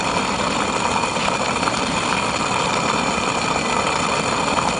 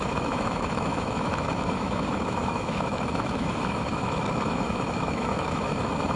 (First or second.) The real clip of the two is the first